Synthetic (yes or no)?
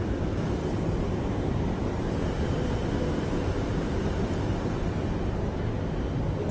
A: yes